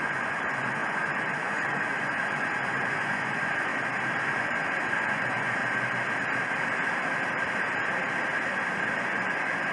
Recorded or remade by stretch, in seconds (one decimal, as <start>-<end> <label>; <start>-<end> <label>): 0.0-3.7 remade; 3.7-4.2 recorded; 4.2-5.6 remade; 5.6-9.0 recorded; 9.0-9.7 remade